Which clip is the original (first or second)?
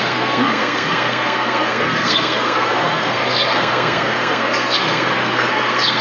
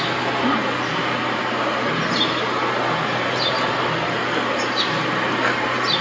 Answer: second